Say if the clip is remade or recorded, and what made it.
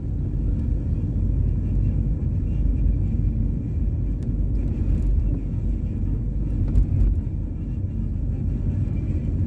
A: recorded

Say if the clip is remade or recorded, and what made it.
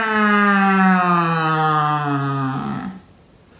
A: recorded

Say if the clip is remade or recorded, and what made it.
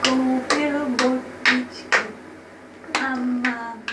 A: recorded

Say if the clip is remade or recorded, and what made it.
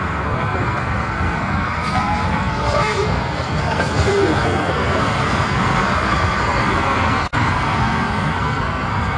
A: remade, codec, SNAC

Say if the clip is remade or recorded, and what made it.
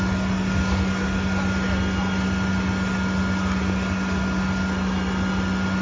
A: recorded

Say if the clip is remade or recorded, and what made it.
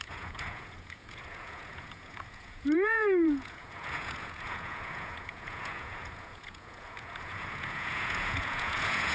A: remade, vocoder, Vocos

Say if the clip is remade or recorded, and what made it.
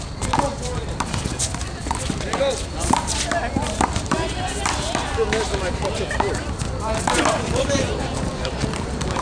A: recorded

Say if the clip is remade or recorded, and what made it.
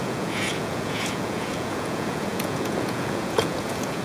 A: remade, vocoder, Vocos